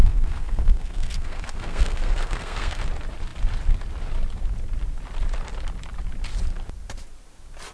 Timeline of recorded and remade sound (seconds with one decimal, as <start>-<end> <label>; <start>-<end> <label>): 0.0-2.8 remade; 2.8-7.7 recorded